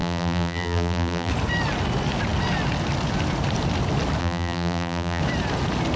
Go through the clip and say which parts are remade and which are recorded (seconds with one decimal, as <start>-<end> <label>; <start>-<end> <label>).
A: 0.0-1.3 remade; 1.3-4.2 recorded; 4.2-5.2 remade; 5.2-6.0 recorded

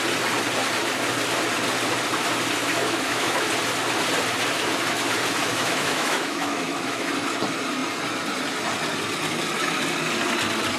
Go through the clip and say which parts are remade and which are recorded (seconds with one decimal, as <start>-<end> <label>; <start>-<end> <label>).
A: 0.0-2.8 recorded; 2.8-3.5 remade; 3.5-5.4 recorded; 5.4-7.1 remade; 7.1-10.8 recorded

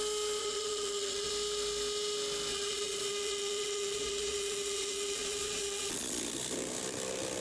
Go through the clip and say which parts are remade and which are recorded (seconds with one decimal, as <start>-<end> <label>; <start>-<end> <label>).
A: 0.0-0.4 recorded; 0.4-1.3 remade; 1.3-2.5 recorded; 2.5-6.2 remade; 6.2-7.4 recorded

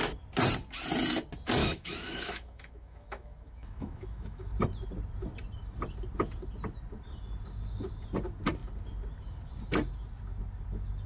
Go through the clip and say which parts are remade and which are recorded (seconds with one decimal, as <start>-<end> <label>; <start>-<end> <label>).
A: 0.0-1.6 recorded; 1.6-4.5 remade; 4.5-11.1 recorded

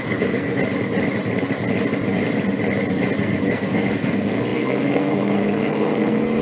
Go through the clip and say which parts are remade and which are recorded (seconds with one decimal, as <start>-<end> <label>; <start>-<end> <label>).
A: 0.0-0.6 remade; 0.6-3.2 recorded; 3.2-6.4 remade

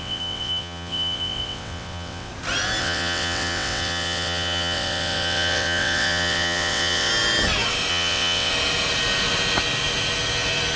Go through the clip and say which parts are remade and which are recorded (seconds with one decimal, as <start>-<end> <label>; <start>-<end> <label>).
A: 0.0-2.3 remade; 2.3-2.8 recorded; 2.8-7.1 remade; 7.1-7.9 recorded; 7.9-8.5 remade; 8.5-10.8 recorded

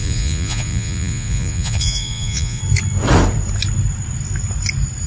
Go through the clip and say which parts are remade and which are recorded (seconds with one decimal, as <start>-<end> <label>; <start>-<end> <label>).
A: 0.0-2.6 remade; 2.6-5.1 recorded

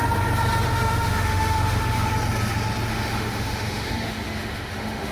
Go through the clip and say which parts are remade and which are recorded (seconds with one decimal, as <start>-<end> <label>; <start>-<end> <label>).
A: 0.0-0.7 recorded; 0.7-2.1 remade; 2.1-2.9 recorded; 2.9-5.1 remade